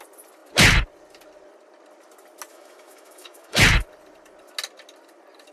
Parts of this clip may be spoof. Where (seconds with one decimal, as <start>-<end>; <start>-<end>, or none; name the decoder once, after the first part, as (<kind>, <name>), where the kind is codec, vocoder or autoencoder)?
2.5-3.6 (autoencoder, DAC-VAE)